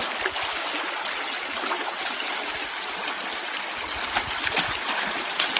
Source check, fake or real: real